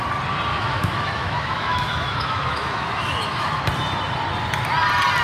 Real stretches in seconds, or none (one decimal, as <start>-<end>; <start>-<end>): 0.0-0.5; 3.6-5.2